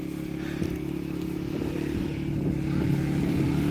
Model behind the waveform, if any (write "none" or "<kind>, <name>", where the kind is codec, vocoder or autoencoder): none